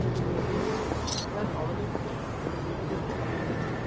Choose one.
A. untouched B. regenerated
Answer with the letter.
A